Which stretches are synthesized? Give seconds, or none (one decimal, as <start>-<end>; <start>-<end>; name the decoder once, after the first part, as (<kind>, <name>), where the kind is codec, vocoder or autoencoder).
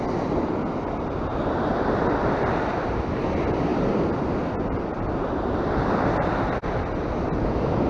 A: none